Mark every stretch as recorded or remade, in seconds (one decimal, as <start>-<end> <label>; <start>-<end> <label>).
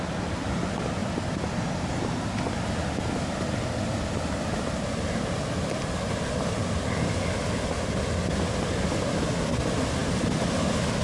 0.0-11.0 recorded